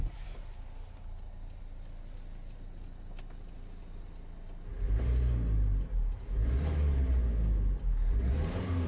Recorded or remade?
recorded